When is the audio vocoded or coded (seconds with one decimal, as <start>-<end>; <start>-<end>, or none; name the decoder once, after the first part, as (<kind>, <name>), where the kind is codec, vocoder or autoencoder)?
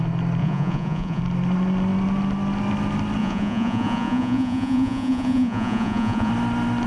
0.4-1.2 (vocoder, Vocos); 3.2-6.3